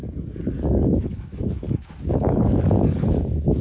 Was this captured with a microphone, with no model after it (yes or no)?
no